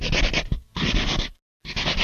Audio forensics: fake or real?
real